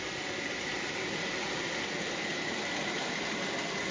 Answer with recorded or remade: recorded